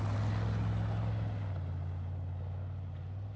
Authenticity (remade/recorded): recorded